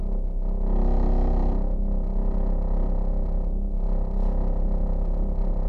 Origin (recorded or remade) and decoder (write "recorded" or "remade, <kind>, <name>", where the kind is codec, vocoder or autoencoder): recorded